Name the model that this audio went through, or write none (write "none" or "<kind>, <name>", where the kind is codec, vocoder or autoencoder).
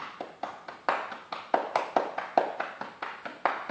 none